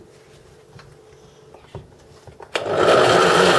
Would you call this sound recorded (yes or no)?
yes